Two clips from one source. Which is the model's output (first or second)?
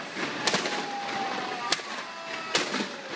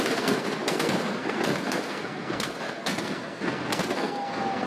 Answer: second